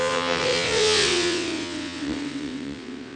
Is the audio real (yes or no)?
no